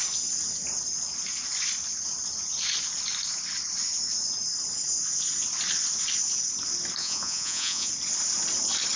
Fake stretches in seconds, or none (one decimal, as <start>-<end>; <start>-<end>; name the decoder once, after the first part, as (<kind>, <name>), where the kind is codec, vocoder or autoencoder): 7.0-7.9 (vocoder, Vocos)